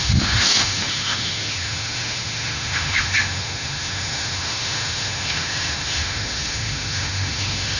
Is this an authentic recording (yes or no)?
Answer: no